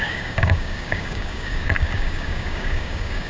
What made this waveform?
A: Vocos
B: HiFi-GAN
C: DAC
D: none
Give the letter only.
C